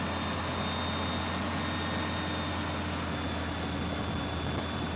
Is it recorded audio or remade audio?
recorded